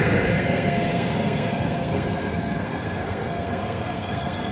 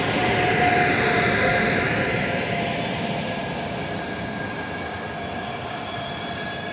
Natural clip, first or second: second